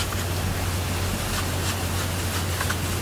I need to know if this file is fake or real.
real